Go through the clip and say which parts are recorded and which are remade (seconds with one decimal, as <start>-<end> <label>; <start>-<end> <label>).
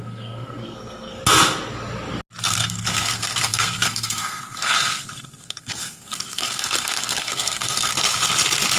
0.0-1.2 remade; 1.2-2.4 recorded; 2.4-7.9 remade; 7.9-8.8 recorded